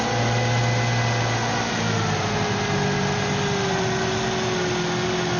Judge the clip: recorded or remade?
recorded